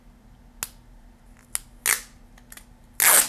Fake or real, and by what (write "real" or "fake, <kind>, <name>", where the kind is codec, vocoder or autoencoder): real